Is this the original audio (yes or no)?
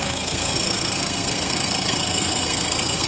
no